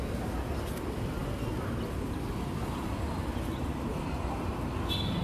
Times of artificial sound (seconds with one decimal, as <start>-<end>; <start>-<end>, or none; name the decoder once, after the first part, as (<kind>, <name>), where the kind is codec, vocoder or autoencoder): 3.6-4.5 (vocoder, BigVGAN v2)